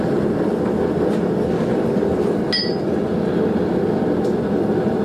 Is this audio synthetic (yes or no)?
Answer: no